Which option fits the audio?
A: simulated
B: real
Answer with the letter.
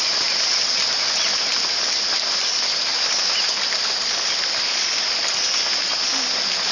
B